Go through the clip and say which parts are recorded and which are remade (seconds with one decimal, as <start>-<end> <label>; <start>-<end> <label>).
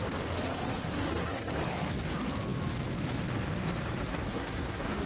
0.0-0.8 recorded; 0.8-1.5 remade; 1.5-4.1 recorded; 4.1-5.1 remade